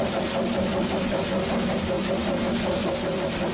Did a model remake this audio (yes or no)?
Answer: no